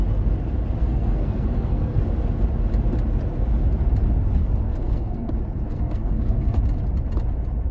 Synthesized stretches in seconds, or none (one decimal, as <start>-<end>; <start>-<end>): 0.8-2.0; 4.4-5.3; 5.7-6.6